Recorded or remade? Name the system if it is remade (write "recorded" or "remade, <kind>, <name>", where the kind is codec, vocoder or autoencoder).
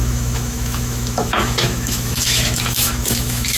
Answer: remade, autoencoder, DAC-VAE